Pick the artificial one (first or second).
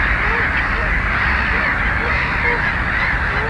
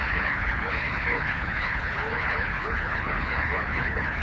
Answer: second